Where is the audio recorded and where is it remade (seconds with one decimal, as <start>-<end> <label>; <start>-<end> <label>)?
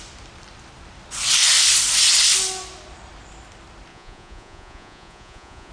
0.0-3.9 recorded; 3.9-5.7 remade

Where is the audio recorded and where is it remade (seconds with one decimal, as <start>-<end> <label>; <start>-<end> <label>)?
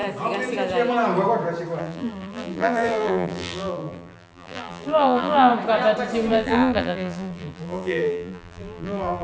0.0-1.8 recorded; 1.8-5.5 remade; 5.5-6.3 recorded; 6.3-9.2 remade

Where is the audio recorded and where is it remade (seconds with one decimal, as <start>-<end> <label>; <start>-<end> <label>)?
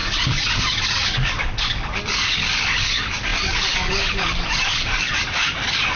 0.0-6.0 remade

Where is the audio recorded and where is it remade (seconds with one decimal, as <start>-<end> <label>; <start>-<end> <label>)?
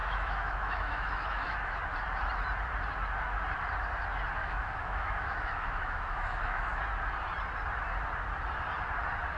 0.0-1.8 remade; 1.8-4.4 recorded; 4.4-6.8 remade; 6.8-9.4 recorded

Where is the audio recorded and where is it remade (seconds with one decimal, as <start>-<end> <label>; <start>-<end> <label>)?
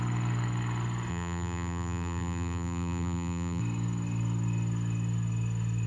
0.0-1.1 recorded; 1.1-3.6 remade; 3.6-5.9 recorded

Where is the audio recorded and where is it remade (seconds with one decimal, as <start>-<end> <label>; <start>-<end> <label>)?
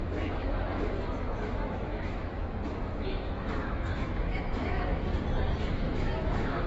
0.0-2.4 remade; 2.4-3.0 recorded; 3.0-5.1 remade; 5.1-5.8 recorded; 5.8-6.7 remade